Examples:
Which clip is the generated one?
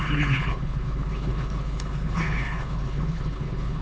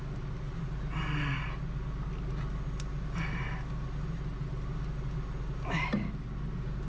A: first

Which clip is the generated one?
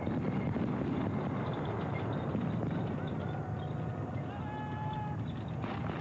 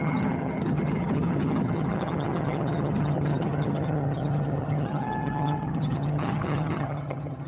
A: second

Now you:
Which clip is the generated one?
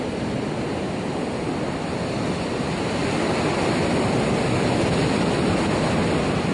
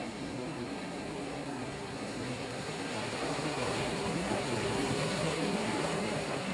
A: second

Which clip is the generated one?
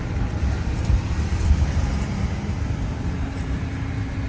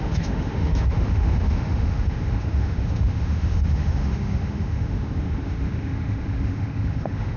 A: second